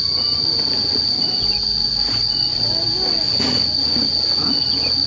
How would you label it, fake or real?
real